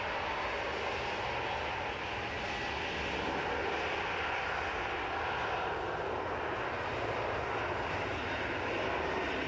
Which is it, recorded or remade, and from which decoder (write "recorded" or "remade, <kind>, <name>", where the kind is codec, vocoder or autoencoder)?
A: recorded